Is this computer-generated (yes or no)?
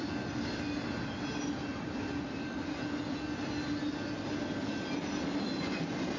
no